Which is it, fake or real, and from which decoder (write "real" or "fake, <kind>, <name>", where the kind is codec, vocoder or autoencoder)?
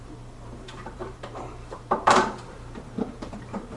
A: fake, vocoder, BigVGAN v2